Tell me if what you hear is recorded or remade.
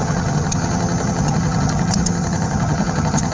remade